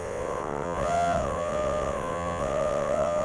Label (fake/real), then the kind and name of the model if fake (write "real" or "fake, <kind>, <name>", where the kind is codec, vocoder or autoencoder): fake, vocoder, WaveNeXt